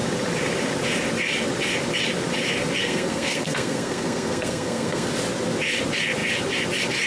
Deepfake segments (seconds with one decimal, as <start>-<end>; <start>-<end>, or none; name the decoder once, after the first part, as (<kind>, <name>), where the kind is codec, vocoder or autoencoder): 2.8-5.1 (codec, SNAC)